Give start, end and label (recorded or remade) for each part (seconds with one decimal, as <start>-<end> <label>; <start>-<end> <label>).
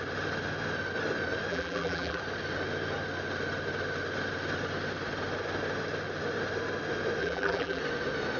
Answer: 0.0-1.5 recorded; 1.5-2.2 remade; 2.2-7.2 recorded; 7.2-7.8 remade; 7.8-8.4 recorded